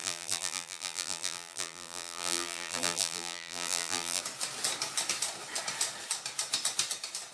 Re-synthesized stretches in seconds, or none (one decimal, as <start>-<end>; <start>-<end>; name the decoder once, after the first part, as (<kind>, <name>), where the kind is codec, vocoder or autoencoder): 0.0-4.2 (vocoder, BigVGAN v2)

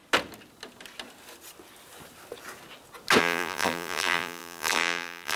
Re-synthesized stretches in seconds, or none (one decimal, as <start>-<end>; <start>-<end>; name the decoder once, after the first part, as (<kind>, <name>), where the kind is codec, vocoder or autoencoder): 3.2-5.4 (vocoder, BigVGAN v2)

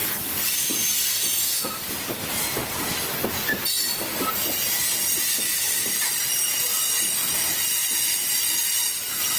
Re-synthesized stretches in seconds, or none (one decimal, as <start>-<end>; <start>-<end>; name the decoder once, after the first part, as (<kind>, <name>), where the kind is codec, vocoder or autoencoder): 2.1-2.6 (vocoder, BigVGAN v2); 5.8-6.7; 7.2-9.4

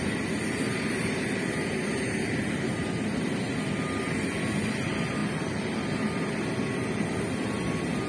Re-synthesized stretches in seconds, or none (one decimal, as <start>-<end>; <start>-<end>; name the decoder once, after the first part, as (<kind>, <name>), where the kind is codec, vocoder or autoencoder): none